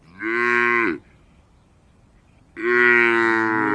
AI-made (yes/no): no